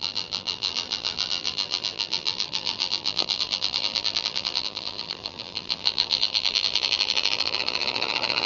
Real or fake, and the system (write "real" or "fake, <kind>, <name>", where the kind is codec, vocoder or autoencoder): fake, vocoder, BigVGAN v2